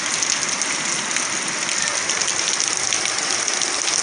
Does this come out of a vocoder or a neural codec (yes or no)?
no